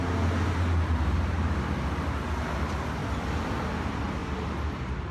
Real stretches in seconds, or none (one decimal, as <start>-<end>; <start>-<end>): 0.0-5.1